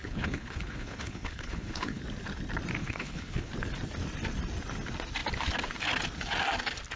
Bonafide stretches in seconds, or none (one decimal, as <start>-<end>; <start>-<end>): 2.0-2.8; 3.5-7.0